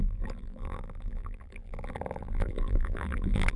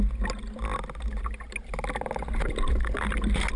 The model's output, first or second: first